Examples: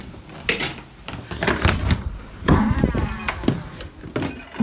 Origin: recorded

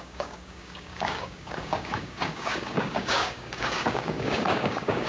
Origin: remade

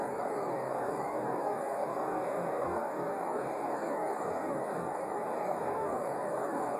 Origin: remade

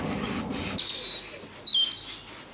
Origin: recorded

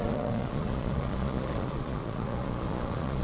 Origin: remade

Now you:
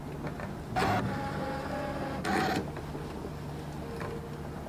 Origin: recorded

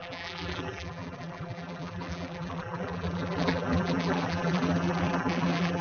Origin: remade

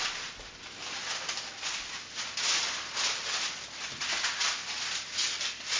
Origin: recorded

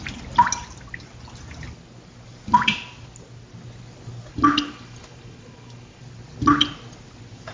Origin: recorded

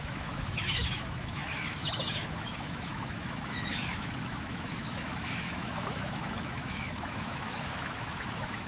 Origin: remade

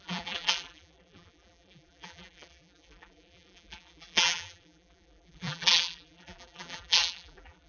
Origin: remade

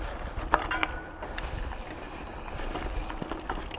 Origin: recorded